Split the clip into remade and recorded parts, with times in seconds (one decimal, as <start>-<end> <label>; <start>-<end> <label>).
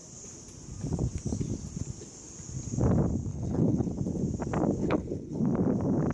0.0-3.3 recorded; 3.3-3.9 remade; 3.9-4.8 recorded; 4.8-5.4 remade; 5.4-6.1 recorded